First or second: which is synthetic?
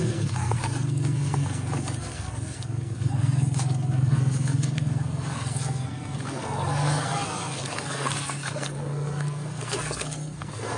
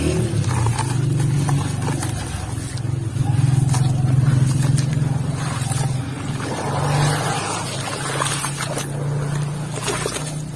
first